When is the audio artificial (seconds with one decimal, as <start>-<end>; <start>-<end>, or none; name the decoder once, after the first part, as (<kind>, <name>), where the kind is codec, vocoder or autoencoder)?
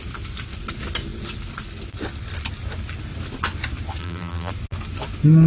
4.0-4.5 (vocoder, BigVGAN v2)